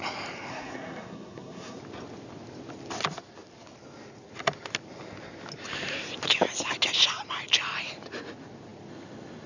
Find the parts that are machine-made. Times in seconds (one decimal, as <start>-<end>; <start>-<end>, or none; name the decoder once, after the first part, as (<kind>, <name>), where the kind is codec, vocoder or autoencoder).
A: 0.5-1.8 (codec, SNAC)